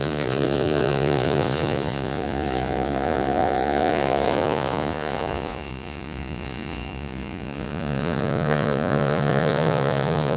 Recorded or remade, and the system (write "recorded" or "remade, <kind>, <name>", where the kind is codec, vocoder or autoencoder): remade, vocoder, Vocos